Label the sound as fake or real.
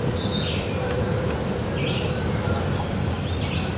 real